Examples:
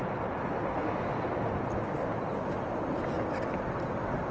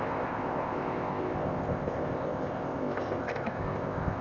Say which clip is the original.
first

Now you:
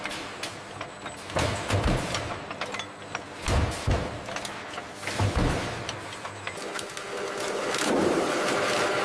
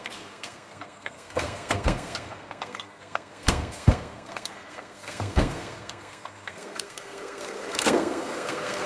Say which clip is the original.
first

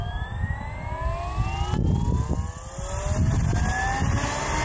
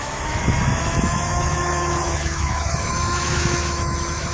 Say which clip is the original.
first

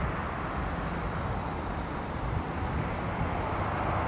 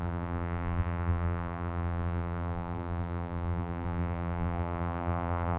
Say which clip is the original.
first